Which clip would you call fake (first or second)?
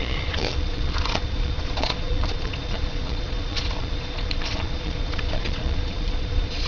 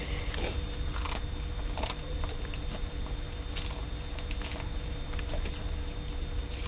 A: first